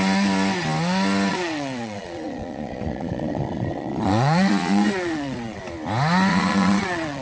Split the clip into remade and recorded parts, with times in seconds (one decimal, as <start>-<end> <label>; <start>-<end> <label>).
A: 0.0-1.3 recorded; 1.3-5.6 remade; 5.6-6.3 recorded; 6.3-7.2 remade